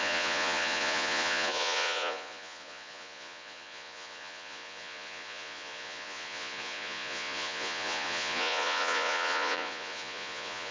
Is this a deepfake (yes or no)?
yes